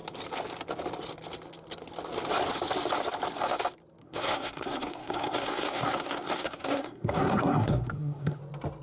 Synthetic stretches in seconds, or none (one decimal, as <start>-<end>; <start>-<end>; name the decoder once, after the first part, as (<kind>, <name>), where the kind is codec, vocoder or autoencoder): 4.0-8.4 (codec, SNAC)